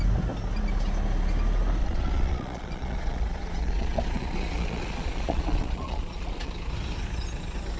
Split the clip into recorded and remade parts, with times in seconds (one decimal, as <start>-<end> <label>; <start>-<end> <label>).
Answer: 0.0-1.8 recorded; 1.8-6.5 remade; 6.5-7.8 recorded